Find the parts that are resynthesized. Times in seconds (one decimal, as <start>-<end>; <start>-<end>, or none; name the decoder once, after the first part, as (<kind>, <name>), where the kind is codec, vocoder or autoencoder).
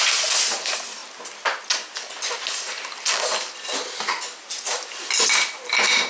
none